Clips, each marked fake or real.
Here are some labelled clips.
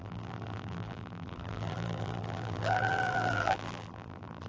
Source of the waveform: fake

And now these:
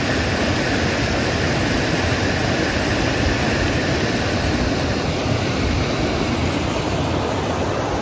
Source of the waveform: real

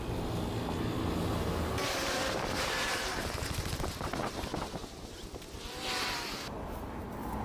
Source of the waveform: real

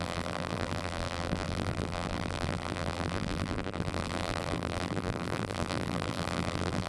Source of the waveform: fake